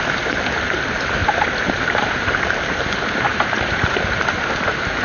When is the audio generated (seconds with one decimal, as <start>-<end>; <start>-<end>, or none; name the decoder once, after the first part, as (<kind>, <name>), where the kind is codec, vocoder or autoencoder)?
1.2-2.5 (vocoder, BigVGAN v2); 3.3-4.1